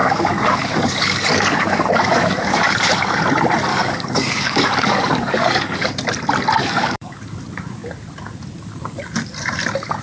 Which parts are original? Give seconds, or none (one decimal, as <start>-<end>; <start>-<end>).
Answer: 3.2-3.7; 5.9-6.6; 7.2-10.0